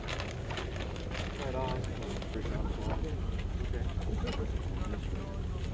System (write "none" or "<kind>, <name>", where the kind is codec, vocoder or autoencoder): none